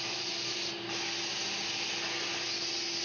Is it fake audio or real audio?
real